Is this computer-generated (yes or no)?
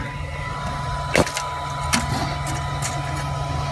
no